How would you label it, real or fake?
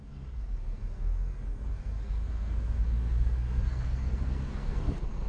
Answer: fake